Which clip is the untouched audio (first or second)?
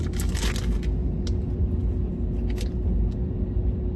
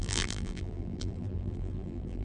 first